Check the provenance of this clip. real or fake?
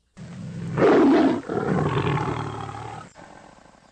real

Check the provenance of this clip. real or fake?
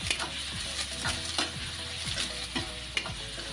real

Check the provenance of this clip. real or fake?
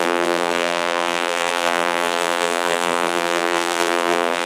fake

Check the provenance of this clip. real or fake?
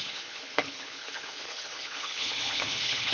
fake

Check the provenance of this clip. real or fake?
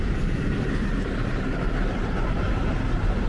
real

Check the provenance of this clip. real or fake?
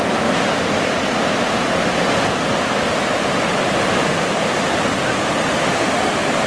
real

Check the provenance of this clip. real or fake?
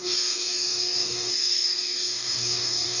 fake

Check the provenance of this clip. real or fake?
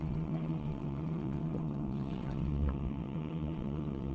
fake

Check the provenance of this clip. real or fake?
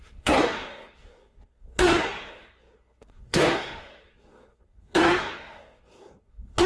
fake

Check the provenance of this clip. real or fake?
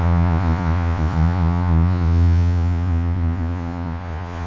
fake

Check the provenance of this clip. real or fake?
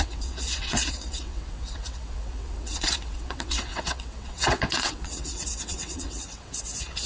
fake